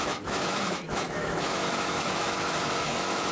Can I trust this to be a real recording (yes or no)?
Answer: no